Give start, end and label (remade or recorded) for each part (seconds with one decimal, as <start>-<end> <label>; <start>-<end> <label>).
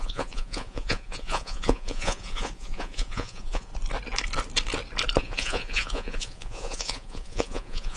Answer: 0.0-3.7 remade; 3.7-5.2 recorded; 5.2-8.0 remade